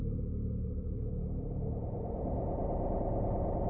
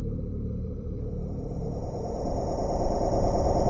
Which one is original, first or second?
first